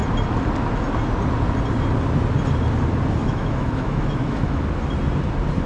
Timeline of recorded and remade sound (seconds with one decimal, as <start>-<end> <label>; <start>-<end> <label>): 0.0-3.2 recorded; 3.2-4.6 remade; 4.6-5.7 recorded

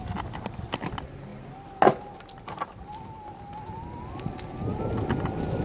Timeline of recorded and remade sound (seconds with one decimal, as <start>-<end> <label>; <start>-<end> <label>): 0.0-5.6 recorded

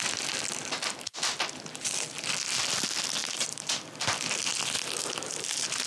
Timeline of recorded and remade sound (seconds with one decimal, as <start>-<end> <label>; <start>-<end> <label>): 0.0-3.2 recorded; 3.2-3.7 remade; 3.7-5.9 recorded

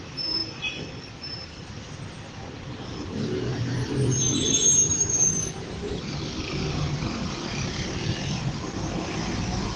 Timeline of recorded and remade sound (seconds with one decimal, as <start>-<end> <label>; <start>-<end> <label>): 0.0-0.4 remade; 0.4-1.6 recorded; 1.6-9.8 remade

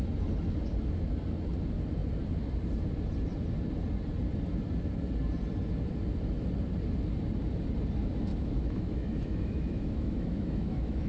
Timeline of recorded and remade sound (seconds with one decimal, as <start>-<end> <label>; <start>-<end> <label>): 0.0-8.3 recorded; 8.3-11.1 remade

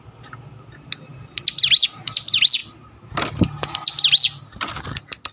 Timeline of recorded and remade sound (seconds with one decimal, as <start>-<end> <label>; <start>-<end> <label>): 0.0-5.3 recorded

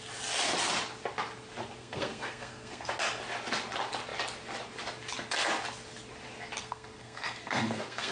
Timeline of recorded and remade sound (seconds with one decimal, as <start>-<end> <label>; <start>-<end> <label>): 0.0-1.8 recorded; 1.8-2.9 remade; 2.9-6.6 recorded; 6.6-8.1 remade

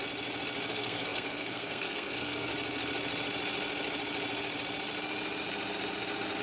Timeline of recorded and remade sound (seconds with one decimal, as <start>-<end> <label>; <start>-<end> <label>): 0.0-0.7 recorded; 0.7-2.5 remade; 2.5-6.4 recorded